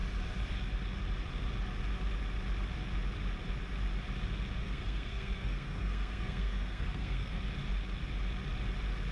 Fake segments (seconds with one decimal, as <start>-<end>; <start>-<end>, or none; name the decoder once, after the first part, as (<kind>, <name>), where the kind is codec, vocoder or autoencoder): 4.6-7.4 (codec, SNAC)

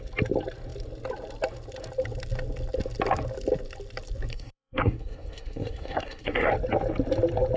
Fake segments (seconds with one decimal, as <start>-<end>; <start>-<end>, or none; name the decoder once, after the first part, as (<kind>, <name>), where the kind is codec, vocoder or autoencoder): 4.3-6.5 (codec, SNAC)